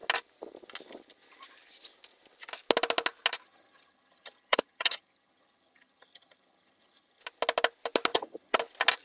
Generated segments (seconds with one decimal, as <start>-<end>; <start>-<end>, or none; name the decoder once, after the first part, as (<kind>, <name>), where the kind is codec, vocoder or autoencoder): 3.4-7.2 (vocoder, HiFi-GAN); 8.1-8.6

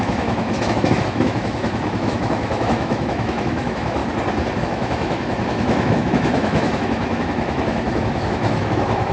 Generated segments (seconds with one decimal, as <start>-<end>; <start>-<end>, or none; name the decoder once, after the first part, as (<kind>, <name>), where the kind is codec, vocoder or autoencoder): 0.0-4.0 (autoencoder, DAC-VAE); 4.6-9.1

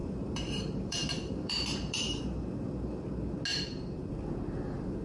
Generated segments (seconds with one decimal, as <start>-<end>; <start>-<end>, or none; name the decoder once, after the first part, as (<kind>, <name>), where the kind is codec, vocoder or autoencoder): 0.0-2.2 (vocoder, BigVGAN v2); 3.5-4.1

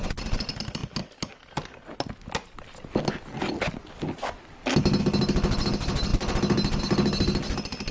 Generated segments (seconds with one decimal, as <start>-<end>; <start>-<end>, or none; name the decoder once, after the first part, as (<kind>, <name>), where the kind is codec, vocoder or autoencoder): none

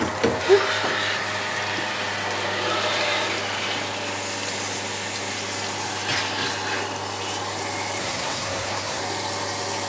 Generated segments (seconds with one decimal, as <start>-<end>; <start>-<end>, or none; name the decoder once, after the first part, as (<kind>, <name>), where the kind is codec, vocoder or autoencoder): 8.0-9.0 (codec, SNAC)

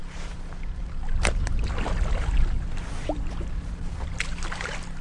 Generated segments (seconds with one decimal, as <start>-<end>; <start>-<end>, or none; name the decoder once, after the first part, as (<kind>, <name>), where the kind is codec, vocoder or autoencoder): none

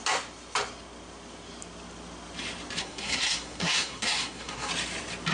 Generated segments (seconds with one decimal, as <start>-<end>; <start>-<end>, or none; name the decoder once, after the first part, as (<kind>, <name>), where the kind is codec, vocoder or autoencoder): 2.8-4.7 (codec, SNAC)